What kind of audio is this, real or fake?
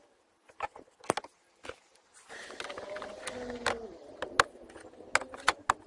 real